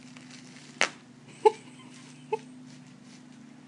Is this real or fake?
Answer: real